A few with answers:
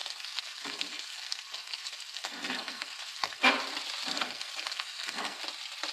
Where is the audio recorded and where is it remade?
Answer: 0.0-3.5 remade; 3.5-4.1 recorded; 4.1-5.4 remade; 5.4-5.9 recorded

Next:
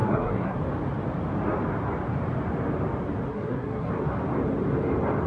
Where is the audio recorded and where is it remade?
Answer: 0.0-0.6 remade; 0.6-3.3 recorded; 3.3-3.9 remade; 3.9-5.3 recorded

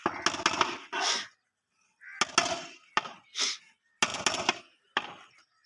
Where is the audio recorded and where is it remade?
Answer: 0.0-5.7 recorded

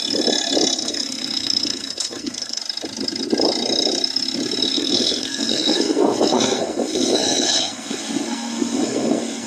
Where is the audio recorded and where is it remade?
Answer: 0.0-0.8 recorded; 0.8-2.6 remade; 2.6-4.7 recorded; 4.7-9.5 remade

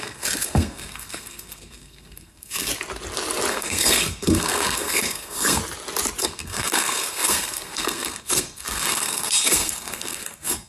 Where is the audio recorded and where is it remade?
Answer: 0.0-2.7 remade; 2.7-3.5 recorded; 3.5-5.6 remade; 5.6-6.2 recorded; 6.2-10.7 remade